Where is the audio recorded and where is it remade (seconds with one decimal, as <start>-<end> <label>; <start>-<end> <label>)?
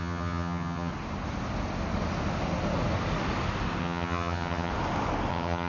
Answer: 0.0-0.9 remade; 0.9-3.8 recorded; 3.8-4.7 remade; 4.7-5.3 recorded; 5.3-5.7 remade